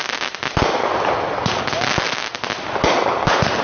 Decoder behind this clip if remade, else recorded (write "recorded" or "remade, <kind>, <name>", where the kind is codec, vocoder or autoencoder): recorded